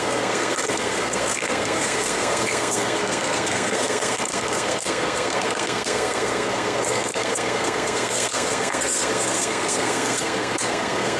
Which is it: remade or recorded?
remade